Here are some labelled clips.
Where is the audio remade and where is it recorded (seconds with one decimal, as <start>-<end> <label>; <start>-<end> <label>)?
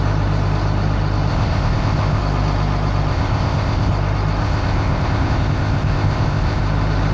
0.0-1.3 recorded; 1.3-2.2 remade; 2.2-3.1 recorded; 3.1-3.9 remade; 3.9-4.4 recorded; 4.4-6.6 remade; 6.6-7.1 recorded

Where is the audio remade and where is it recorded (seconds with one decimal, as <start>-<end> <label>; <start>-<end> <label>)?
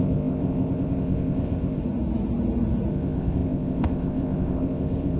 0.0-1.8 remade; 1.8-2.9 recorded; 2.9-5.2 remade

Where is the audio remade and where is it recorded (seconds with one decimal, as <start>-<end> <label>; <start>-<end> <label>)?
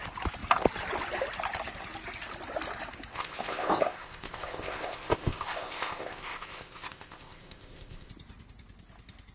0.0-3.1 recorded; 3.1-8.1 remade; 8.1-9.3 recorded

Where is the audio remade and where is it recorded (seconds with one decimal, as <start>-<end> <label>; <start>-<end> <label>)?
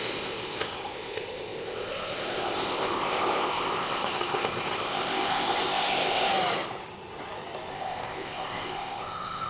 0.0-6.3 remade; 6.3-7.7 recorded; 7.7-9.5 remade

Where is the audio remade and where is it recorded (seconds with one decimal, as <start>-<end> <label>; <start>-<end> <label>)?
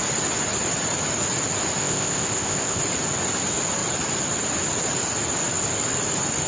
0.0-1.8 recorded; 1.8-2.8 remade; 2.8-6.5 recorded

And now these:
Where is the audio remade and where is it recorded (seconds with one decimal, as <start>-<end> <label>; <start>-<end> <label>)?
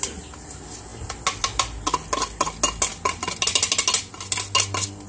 0.0-5.1 recorded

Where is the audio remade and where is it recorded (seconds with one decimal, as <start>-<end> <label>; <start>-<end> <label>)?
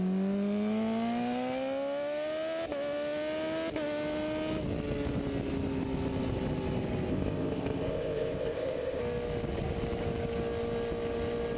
0.0-7.1 recorded; 7.1-9.0 remade; 9.0-11.6 recorded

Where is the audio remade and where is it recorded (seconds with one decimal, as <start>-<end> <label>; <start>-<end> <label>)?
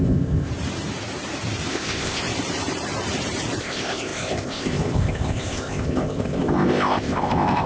0.0-0.5 remade; 0.5-1.7 recorded; 1.7-2.2 remade; 2.2-3.6 recorded; 3.6-7.7 remade